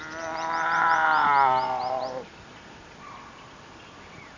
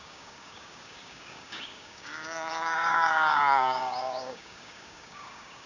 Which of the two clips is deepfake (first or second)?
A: second